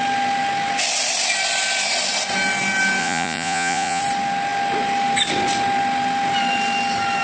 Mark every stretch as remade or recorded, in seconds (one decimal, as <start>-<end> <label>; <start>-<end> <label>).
0.0-3.0 recorded; 3.0-4.0 remade; 4.0-7.2 recorded